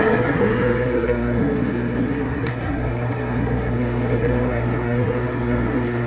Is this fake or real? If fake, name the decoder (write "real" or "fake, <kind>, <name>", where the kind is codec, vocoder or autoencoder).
fake, codec, SNAC